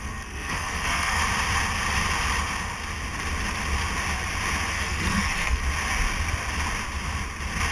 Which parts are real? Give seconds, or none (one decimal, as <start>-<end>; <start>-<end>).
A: 1.2-4.7; 5.6-7.7